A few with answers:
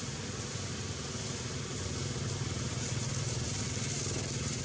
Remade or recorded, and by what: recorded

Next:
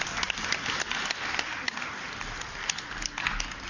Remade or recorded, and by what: recorded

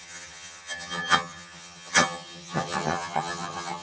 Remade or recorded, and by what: remade, vocoder, HiFi-GAN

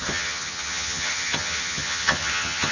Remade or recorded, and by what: remade, vocoder, HiFi-GAN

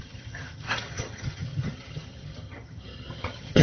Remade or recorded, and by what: remade, vocoder, HiFi-GAN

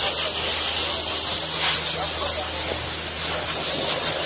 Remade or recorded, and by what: recorded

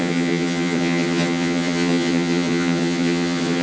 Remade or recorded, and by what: remade, vocoder, HiFi-GAN